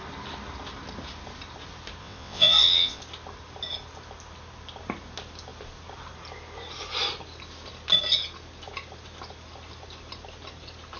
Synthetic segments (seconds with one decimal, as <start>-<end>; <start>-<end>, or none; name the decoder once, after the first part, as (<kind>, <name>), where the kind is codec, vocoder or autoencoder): 2.0-3.0 (vocoder, WaveNeXt)